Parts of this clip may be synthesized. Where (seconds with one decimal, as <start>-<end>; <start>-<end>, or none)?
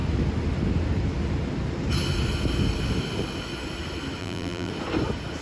4.2-4.7